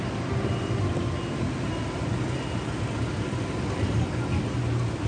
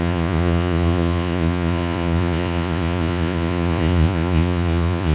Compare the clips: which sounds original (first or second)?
first